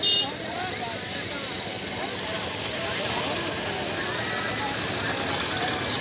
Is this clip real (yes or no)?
yes